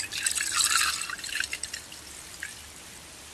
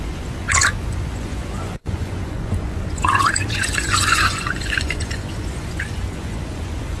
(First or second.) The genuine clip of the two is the first